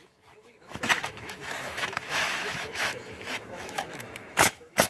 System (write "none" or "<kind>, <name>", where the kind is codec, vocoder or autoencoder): autoencoder, DAC-VAE